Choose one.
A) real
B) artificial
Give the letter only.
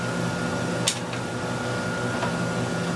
A